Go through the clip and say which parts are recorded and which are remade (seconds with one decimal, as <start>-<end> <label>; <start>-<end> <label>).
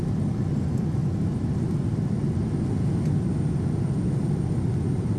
0.0-5.2 recorded